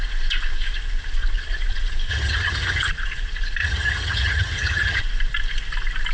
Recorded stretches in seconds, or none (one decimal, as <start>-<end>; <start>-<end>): 0.0-2.1; 2.9-3.6; 5.0-6.1